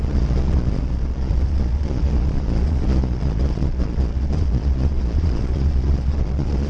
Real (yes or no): no